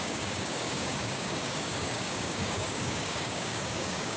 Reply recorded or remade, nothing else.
remade